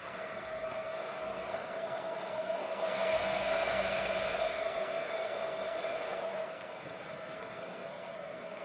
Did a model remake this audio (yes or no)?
yes